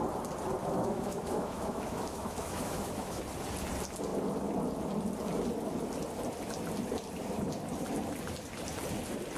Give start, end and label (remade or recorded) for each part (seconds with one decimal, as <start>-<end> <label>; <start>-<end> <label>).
0.0-0.6 recorded; 0.6-3.2 remade; 3.2-9.4 recorded